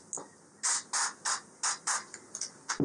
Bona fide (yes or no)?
yes